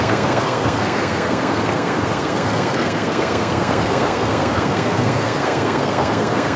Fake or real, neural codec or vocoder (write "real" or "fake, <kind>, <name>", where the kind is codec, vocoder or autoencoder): fake, codec, SNAC